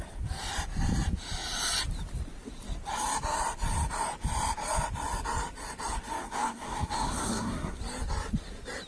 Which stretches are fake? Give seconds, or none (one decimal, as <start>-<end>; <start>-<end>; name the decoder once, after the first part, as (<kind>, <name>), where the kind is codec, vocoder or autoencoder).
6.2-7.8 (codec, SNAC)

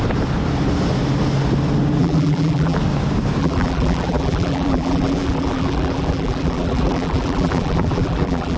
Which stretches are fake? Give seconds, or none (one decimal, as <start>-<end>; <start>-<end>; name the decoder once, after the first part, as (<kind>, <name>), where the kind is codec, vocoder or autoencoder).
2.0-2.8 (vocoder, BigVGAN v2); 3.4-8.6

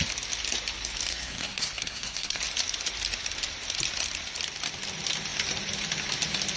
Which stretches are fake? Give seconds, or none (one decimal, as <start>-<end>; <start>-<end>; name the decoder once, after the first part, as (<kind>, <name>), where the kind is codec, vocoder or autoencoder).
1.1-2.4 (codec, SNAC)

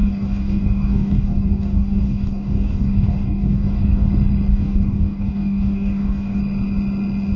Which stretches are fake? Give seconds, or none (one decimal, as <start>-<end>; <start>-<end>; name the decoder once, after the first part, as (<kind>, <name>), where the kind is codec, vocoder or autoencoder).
0.0-4.1 (codec, DAC); 4.5-6.4

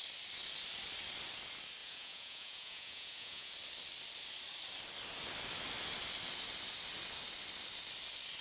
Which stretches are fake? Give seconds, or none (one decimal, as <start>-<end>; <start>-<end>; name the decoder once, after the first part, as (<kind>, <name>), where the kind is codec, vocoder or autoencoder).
1.8-3.5 (vocoder, Vocos)

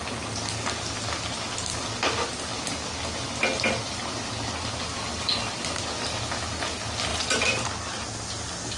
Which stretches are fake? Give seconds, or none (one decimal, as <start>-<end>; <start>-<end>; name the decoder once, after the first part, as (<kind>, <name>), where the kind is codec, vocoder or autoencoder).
5.1-5.8 (vocoder, BigVGAN v2); 7.1-7.7

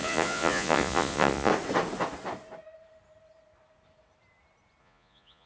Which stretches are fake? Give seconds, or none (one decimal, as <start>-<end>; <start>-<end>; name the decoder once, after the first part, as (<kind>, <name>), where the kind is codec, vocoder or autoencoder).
0.0-1.5 (vocoder, Vocos); 4.8-5.5